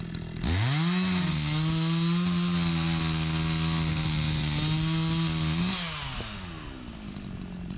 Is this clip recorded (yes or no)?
yes